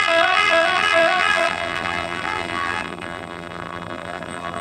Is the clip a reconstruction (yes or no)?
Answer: yes